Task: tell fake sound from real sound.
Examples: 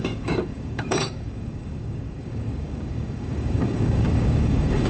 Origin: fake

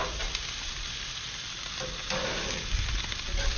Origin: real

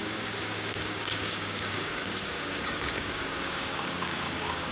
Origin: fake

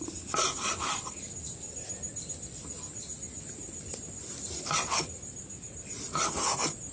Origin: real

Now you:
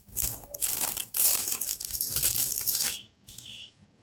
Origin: fake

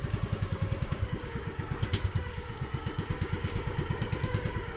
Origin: fake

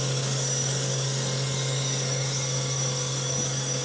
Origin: fake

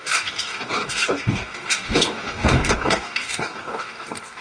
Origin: fake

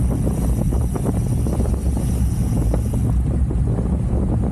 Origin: real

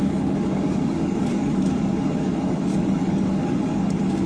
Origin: fake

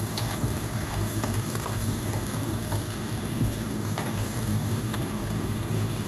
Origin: fake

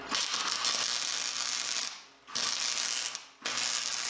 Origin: real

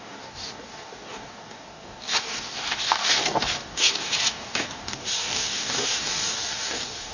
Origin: fake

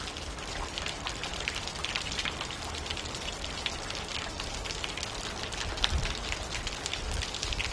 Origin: real